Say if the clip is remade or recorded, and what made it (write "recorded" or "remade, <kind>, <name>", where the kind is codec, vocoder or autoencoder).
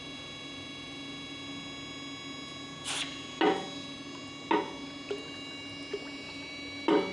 recorded